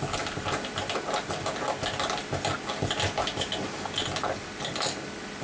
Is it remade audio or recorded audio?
recorded